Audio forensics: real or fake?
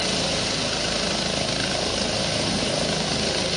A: real